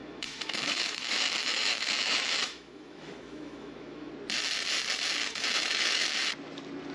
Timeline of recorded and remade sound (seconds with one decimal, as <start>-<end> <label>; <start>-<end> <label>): 0.0-4.1 remade; 4.1-5.2 recorded; 5.2-6.2 remade; 6.2-6.9 recorded